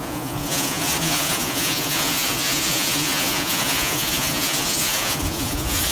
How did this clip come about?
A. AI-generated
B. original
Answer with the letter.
A